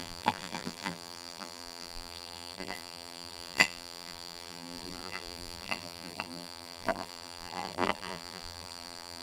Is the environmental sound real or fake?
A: fake